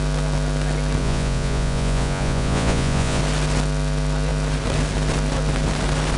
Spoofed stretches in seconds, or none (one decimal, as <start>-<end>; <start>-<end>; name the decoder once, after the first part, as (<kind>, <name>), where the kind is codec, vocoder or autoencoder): 1.0-3.2 (vocoder, Vocos)